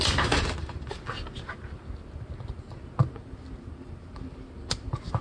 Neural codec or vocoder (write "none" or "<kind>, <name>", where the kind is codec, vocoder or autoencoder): none